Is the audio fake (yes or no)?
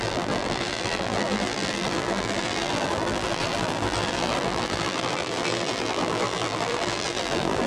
yes